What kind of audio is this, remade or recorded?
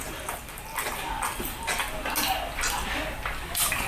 recorded